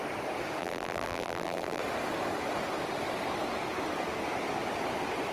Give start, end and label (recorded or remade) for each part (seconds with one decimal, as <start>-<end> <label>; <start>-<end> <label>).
0.0-0.6 recorded; 0.6-1.8 remade; 1.8-5.3 recorded